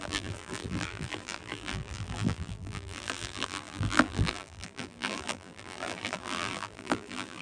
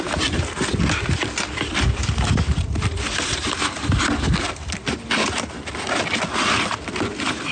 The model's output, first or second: first